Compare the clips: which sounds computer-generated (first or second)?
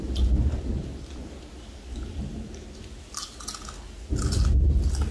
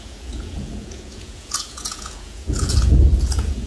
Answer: second